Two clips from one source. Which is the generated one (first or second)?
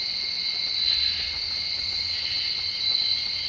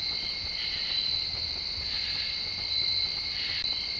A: first